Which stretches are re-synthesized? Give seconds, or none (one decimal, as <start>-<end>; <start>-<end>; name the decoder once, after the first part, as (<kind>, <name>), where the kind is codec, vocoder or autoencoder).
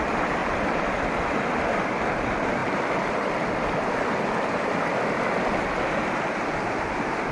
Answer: 2.6-4.2 (vocoder, BigVGAN v2)